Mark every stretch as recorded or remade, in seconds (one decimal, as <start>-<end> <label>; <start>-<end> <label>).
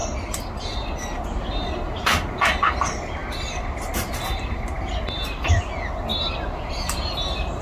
0.0-7.6 recorded